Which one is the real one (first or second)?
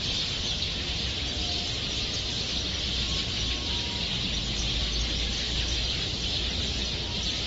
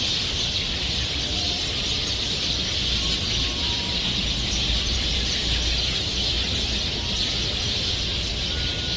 first